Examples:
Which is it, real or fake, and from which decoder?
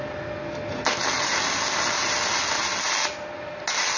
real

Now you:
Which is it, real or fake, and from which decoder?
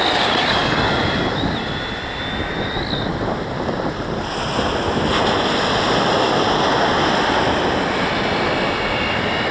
real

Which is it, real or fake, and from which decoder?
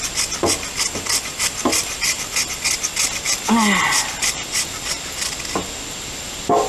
real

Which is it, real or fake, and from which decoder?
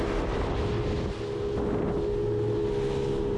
real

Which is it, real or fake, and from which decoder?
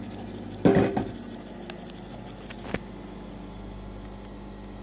real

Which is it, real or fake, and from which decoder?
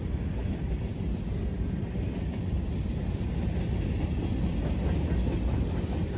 real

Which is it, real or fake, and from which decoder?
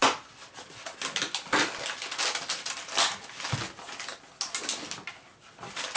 real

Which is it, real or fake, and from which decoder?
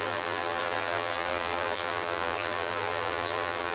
fake, vocoder, BigVGAN v2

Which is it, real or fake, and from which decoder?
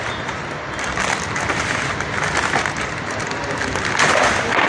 real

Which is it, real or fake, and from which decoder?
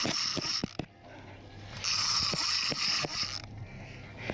real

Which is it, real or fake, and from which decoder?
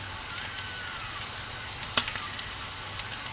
real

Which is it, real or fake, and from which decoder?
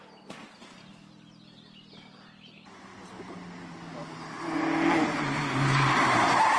real